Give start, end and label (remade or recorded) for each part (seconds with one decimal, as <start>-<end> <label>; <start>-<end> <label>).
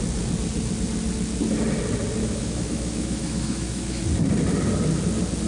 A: 0.0-2.2 recorded; 2.2-4.0 remade; 4.0-5.5 recorded